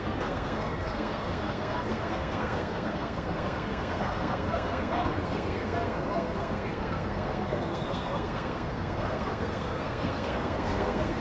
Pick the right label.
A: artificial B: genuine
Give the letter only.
A